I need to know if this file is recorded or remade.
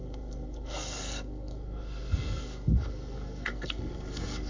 remade